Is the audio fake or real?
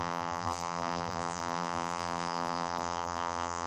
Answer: fake